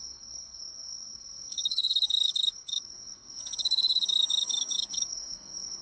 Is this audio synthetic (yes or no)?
yes